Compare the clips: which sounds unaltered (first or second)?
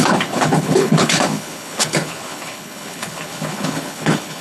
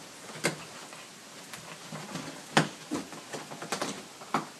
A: second